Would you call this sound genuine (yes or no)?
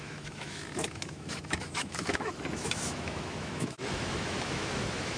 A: no